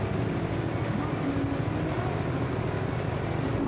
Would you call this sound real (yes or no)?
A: yes